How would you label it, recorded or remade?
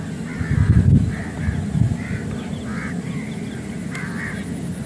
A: recorded